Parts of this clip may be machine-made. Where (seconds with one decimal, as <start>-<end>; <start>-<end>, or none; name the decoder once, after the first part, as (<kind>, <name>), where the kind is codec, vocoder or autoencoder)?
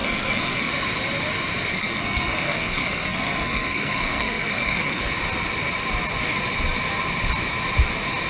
0.0-0.7 (codec, SNAC); 1.7-5.0